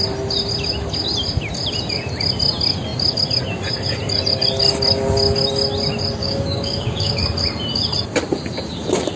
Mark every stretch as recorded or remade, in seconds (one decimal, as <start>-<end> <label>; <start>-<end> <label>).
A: 0.0-6.2 recorded; 6.2-7.2 remade; 7.2-9.2 recorded